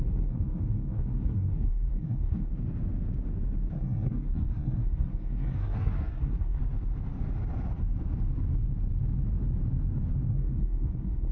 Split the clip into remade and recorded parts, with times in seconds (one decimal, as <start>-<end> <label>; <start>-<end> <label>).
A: 0.0-2.5 remade; 2.5-3.7 recorded; 3.7-6.6 remade; 6.6-10.3 recorded; 10.3-11.3 remade